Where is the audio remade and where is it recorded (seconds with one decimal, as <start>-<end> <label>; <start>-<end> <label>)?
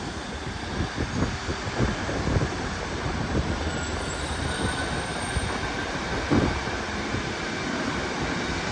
0.0-1.5 recorded; 1.5-3.5 remade; 3.5-5.1 recorded; 5.1-7.3 remade; 7.3-8.7 recorded